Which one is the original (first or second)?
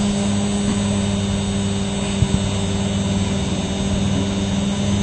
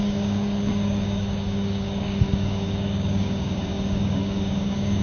first